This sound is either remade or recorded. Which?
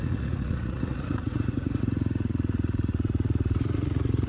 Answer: remade